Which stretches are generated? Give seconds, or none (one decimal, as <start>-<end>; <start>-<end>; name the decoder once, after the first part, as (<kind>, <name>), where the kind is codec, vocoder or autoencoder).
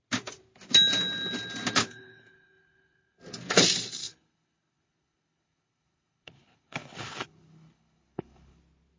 1.8-3.2 (codec, HILCodec); 4.0-8.6